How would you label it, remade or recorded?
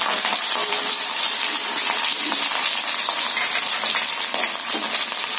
remade